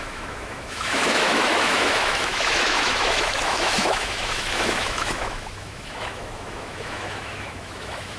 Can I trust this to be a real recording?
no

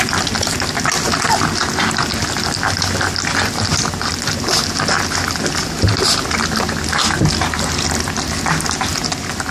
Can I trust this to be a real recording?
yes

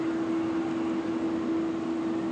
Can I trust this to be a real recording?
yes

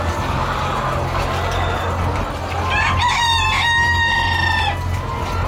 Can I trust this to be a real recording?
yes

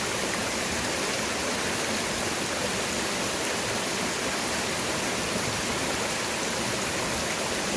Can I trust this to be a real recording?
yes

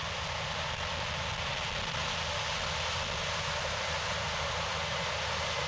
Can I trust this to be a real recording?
yes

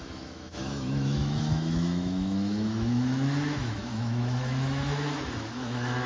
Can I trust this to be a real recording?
no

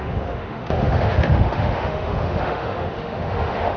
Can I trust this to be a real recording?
no